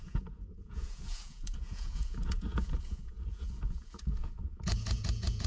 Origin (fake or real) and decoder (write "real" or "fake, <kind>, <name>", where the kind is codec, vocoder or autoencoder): fake, vocoder, Vocos